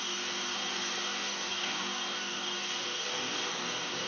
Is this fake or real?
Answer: fake